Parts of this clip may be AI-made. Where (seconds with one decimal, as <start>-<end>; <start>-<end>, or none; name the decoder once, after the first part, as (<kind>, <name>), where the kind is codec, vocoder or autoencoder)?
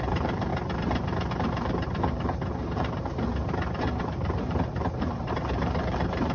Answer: 0.0-0.5 (vocoder, BigVGAN v2); 1.3-3.3; 4.0-6.3